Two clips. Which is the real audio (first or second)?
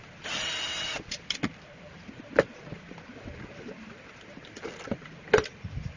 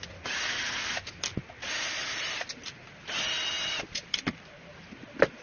second